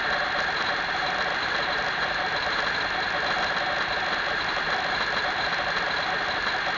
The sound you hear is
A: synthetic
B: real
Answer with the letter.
B